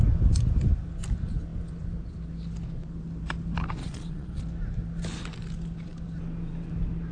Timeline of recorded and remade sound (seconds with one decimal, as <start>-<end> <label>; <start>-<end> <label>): 0.0-3.8 recorded; 3.8-4.4 remade; 4.4-7.1 recorded